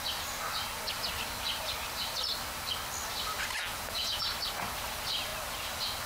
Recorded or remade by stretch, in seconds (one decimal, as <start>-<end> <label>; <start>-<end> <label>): 0.0-3.7 recorded; 3.7-4.2 remade; 4.2-6.1 recorded